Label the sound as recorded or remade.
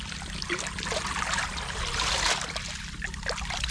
recorded